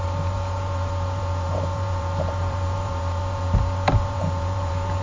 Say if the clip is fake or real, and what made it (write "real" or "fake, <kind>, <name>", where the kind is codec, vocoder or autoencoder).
fake, vocoder, BigVGAN v2